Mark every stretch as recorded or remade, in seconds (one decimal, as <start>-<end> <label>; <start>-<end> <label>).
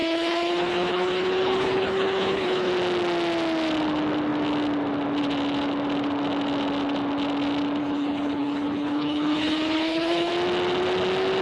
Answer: 0.0-2.7 remade; 2.7-7.8 recorded; 7.8-10.3 remade; 10.3-11.4 recorded